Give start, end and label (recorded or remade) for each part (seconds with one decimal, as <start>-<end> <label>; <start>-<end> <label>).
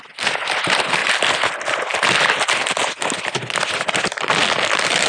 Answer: 0.0-1.0 recorded; 1.0-1.5 remade; 1.5-1.9 recorded; 1.9-2.8 remade; 2.8-5.1 recorded